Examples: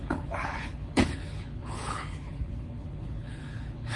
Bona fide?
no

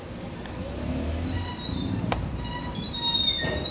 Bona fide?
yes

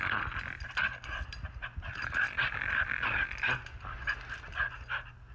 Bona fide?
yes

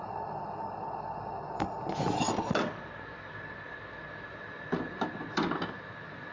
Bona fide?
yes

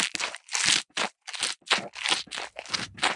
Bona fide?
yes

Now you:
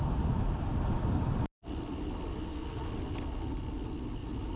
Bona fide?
yes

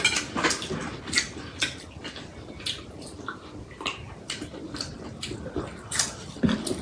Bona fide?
yes